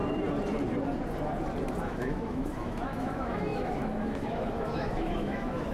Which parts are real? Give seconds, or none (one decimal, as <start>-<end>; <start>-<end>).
0.0-1.8